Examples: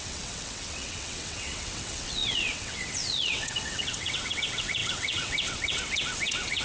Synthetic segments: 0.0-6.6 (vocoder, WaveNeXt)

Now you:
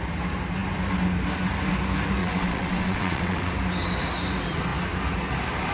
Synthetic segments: 2.2-3.5 (vocoder, WaveNeXt)

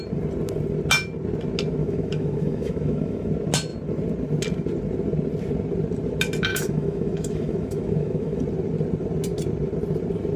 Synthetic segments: 1.8-3.3 (autoencoder, DAC-VAE); 6.5-8.4

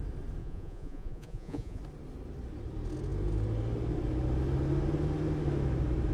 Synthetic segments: 0.4-1.8 (vocoder, Vocos)

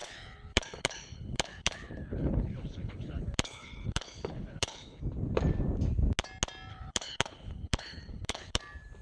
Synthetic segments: 0.0-5.0 (codec, HILCodec); 6.7-8.6

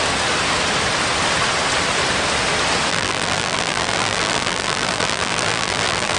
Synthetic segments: 2.9-6.2 (vocoder, BigVGAN v2)